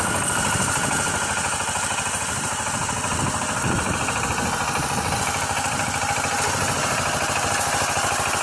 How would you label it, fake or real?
real